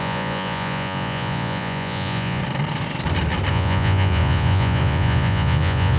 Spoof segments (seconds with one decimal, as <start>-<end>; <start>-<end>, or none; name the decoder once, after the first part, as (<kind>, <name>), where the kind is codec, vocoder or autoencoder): 0.0-2.4 (vocoder, Vocos); 3.5-6.0